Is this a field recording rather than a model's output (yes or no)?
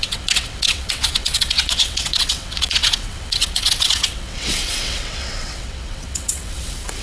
no